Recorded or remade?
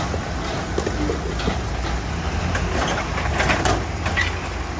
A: recorded